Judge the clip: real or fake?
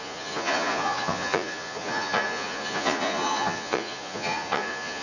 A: fake